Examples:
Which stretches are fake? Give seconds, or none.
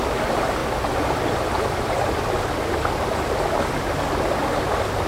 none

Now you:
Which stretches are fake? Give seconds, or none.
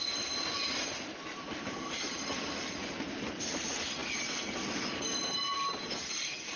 none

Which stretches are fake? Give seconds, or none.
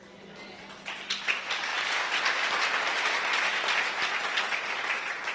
none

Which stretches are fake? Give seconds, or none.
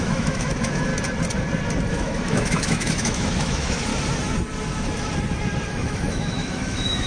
0.0-0.9 (autoencoder, DAC-VAE); 1.9-3.9; 5.7-7.1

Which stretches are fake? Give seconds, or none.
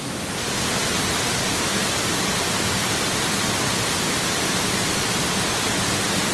none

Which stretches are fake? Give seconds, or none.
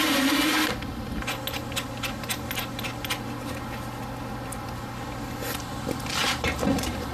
6.2-7.1 (vocoder, BigVGAN v2)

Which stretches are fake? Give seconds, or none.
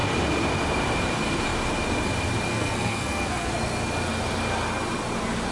2.5-3.5 (codec, SNAC)